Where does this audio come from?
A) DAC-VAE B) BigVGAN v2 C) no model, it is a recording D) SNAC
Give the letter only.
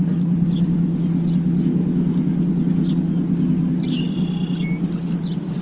C